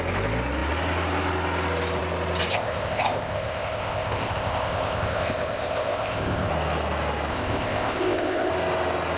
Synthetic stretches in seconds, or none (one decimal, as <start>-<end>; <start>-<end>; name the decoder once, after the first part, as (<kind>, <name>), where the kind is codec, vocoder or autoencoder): 2.5-6.5 (codec, ZipCodec); 7.3-8.5